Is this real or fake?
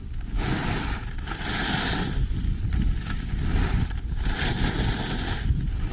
real